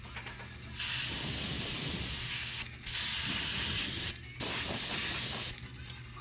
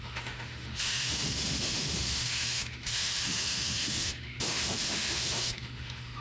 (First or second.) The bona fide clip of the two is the first